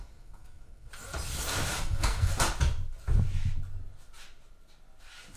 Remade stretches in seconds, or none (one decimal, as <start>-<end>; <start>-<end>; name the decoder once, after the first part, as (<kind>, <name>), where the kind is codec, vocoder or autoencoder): 0.0-0.9 (codec, SNAC); 1.7-2.3